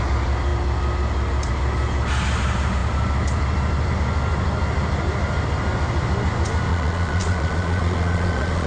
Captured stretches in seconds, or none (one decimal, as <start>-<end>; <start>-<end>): 0.0-6.7